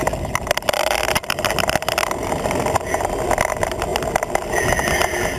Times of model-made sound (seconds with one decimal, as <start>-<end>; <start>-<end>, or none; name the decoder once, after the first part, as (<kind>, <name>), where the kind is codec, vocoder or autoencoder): none